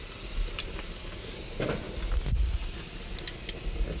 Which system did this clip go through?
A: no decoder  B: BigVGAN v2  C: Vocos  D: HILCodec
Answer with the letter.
A